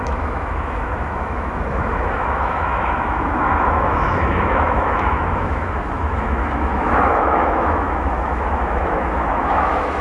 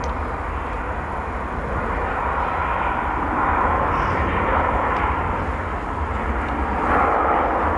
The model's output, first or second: first